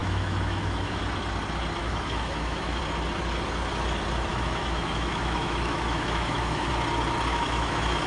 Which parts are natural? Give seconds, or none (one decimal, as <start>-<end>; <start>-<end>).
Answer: 1.0-1.8; 2.8-4.3; 6.7-7.3